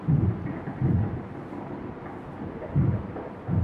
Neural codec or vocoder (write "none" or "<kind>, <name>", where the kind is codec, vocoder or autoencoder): none